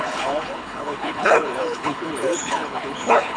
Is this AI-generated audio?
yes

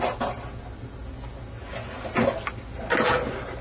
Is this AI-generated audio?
no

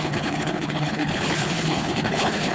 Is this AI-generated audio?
yes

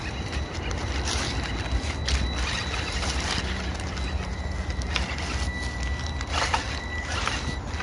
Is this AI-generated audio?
no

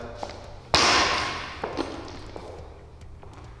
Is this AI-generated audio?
no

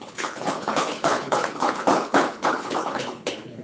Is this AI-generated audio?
yes